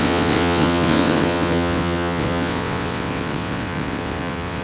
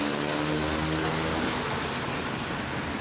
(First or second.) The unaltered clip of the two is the second